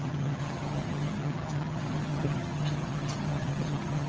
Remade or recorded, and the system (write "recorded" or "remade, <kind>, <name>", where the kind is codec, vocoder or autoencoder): remade, vocoder, HiFi-GAN